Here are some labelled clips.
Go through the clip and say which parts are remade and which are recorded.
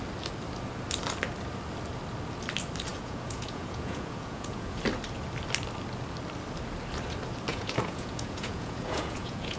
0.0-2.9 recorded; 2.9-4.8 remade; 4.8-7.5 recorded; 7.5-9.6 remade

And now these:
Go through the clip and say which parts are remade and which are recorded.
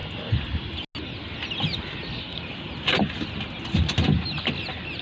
0.0-5.0 recorded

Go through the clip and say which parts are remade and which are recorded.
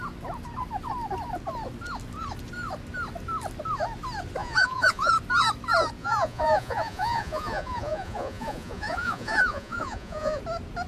0.0-4.4 recorded; 4.4-5.1 remade; 5.1-6.0 recorded; 6.0-10.4 remade; 10.4-10.9 recorded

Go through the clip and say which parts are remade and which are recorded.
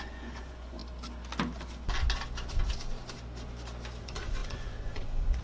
0.0-0.8 remade; 0.8-4.0 recorded; 4.0-5.4 remade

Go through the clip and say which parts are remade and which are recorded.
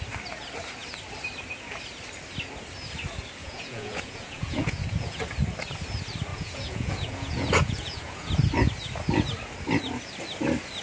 0.0-3.4 recorded; 3.4-5.2 remade; 5.2-6.3 recorded; 6.3-8.3 remade; 8.3-10.8 recorded